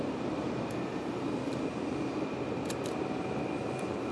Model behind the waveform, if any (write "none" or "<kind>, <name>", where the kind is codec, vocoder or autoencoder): none